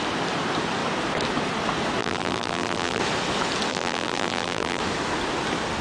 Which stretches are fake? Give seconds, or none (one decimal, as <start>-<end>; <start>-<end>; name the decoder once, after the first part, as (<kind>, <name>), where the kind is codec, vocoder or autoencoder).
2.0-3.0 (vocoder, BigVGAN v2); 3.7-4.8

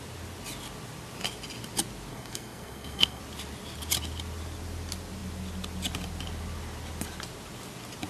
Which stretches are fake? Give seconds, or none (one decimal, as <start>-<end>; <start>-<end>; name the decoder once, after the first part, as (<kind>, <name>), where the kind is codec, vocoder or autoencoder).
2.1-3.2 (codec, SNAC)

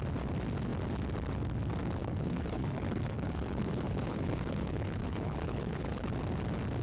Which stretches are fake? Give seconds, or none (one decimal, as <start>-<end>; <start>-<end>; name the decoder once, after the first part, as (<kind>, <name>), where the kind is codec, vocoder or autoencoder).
2.0-6.1 (codec, HILCodec)